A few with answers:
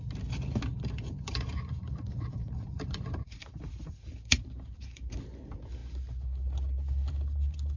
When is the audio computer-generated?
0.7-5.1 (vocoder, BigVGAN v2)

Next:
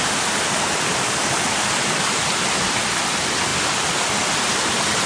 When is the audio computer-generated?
none